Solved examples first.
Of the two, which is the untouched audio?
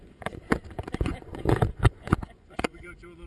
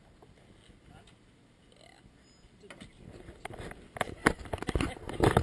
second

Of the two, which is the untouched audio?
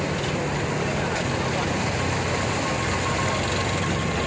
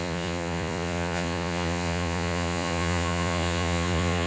first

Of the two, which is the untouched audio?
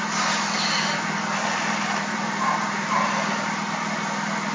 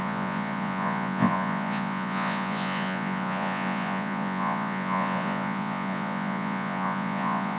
first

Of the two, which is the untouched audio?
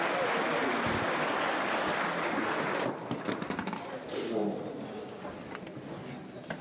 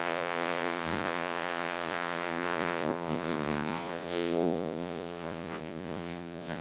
first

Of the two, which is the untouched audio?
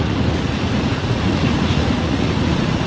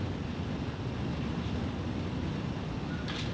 second